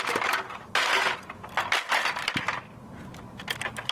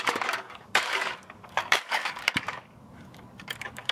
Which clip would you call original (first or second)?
first